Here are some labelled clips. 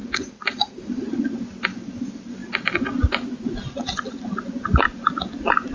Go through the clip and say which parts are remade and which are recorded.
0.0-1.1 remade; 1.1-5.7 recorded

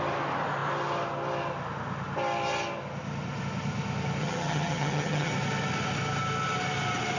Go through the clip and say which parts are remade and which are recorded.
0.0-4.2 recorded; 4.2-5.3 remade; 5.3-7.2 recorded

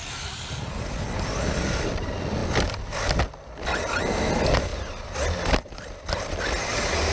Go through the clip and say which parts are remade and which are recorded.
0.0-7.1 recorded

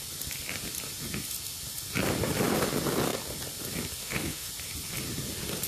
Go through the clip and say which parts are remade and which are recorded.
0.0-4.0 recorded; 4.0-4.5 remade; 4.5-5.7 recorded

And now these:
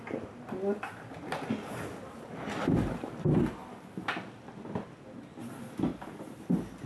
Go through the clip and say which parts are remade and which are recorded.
0.0-6.9 recorded

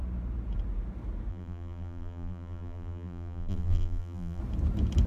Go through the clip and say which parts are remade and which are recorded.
0.0-1.3 recorded; 1.3-4.4 remade; 4.4-5.1 recorded

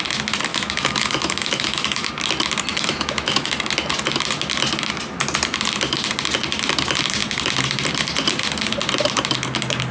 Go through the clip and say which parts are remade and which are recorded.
0.0-0.5 recorded; 0.5-2.1 remade; 2.1-2.7 recorded; 2.7-3.5 remade; 3.5-9.9 recorded